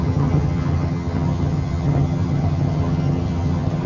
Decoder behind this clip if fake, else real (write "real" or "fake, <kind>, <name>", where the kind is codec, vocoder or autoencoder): fake, vocoder, HiFi-GAN